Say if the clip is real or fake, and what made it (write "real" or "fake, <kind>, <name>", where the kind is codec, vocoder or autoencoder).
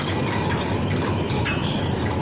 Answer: fake, vocoder, BigVGAN v2